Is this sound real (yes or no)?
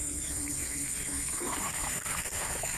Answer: no